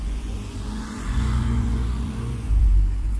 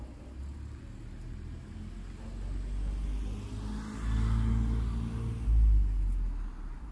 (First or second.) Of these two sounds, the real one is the second